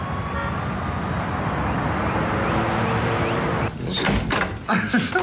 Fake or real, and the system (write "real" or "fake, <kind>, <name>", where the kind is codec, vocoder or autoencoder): real